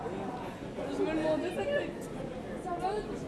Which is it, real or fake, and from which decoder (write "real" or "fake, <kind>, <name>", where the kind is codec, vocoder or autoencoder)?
real